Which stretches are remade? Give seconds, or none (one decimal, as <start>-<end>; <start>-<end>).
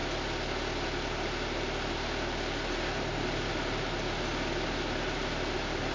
none